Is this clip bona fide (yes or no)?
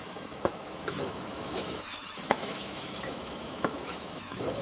no